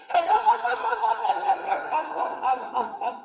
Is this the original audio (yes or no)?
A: no